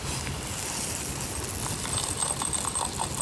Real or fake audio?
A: real